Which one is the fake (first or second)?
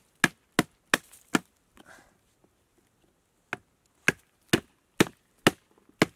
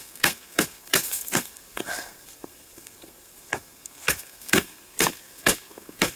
second